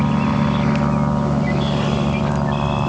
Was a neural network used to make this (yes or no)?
no